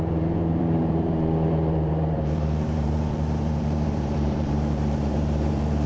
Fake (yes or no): yes